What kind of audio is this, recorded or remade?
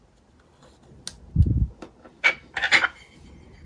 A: recorded